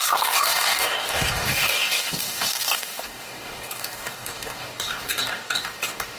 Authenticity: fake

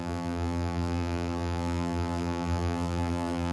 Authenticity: fake